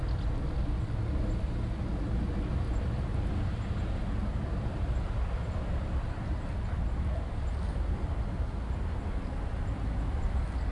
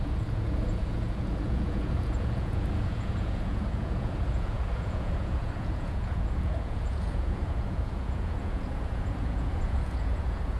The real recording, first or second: first